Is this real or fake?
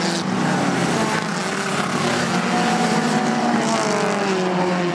real